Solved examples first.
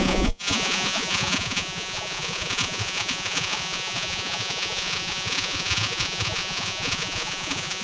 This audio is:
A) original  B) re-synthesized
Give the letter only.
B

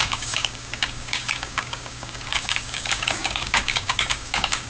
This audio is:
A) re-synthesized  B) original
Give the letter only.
A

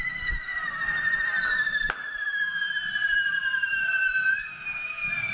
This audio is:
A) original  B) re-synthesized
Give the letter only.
A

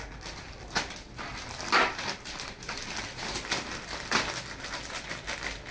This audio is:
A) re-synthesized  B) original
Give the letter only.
B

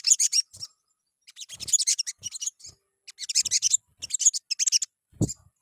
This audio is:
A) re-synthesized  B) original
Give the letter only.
B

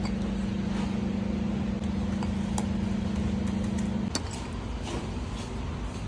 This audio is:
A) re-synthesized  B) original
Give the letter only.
B